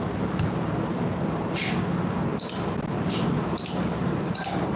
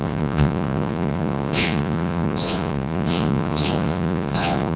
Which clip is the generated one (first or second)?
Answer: second